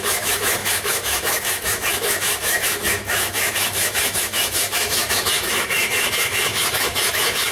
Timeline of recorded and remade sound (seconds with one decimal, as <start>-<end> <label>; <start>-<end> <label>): 0.0-7.5 remade